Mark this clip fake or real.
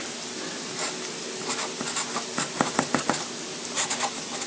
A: real